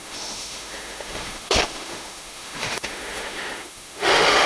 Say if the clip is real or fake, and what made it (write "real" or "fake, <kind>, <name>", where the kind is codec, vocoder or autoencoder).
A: fake, autoencoder, DAC-VAE